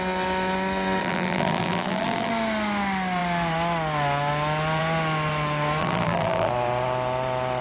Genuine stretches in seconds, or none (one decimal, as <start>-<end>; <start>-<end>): 0.0-1.0; 2.3-5.8; 6.5-7.6